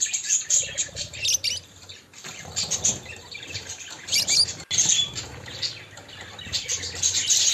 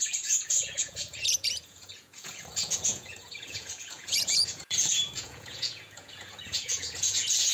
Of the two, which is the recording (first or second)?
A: first